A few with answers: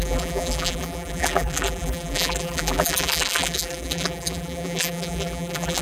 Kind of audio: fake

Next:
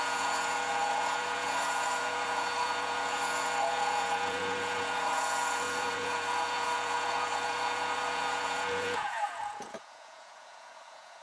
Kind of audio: fake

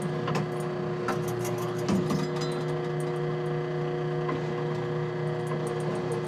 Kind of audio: real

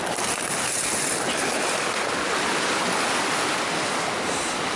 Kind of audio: real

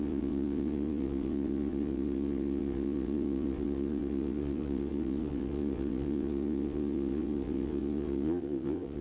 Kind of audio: fake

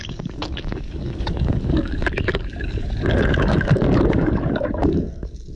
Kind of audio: fake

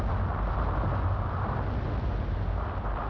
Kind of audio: real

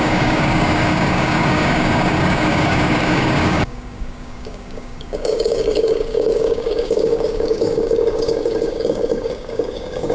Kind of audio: fake